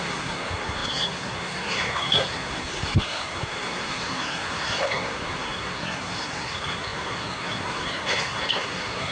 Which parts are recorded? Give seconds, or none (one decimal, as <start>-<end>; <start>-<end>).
none